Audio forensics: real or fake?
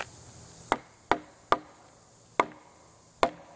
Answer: real